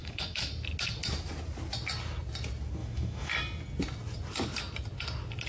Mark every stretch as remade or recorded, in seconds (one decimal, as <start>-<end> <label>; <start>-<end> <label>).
0.0-0.5 remade; 0.5-2.8 recorded; 2.8-3.3 remade; 3.3-5.5 recorded